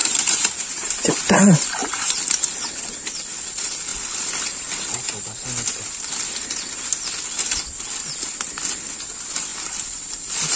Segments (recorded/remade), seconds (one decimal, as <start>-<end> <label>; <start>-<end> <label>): 0.0-1.1 remade; 1.1-1.8 recorded; 1.8-2.4 remade; 2.4-10.6 recorded